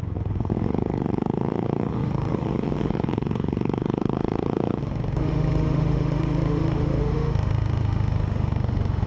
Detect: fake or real fake